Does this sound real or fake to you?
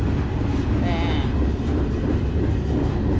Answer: real